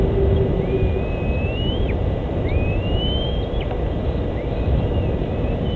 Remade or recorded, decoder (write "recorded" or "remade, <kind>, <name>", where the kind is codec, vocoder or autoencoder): recorded